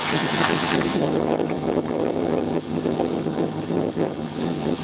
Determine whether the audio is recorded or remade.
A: remade